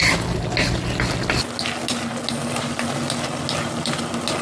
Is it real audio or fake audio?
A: real